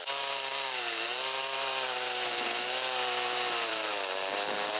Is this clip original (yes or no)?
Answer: no